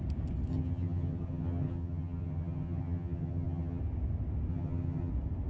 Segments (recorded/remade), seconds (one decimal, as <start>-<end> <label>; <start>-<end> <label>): 0.0-0.5 recorded; 0.5-3.8 remade; 3.8-4.5 recorded; 4.5-5.1 remade; 5.1-5.5 recorded